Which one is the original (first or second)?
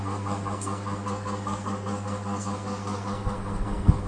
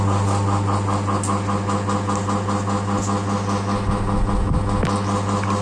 second